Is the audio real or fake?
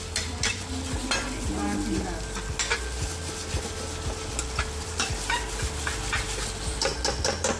real